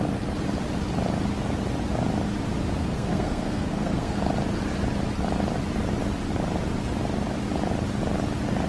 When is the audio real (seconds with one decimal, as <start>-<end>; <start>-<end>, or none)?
0.0-2.8; 4.3-8.7